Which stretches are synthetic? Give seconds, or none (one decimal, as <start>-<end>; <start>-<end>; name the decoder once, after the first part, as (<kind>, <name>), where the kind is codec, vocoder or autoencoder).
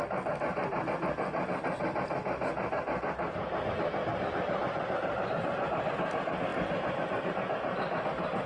none